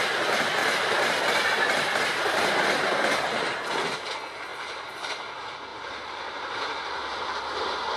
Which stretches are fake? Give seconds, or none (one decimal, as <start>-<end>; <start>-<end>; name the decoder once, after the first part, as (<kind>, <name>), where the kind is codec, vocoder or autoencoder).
0.6-4.1 (vocoder, BigVGAN v2); 4.5-5.1; 5.7-7.2